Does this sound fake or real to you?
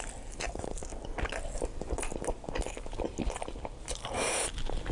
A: real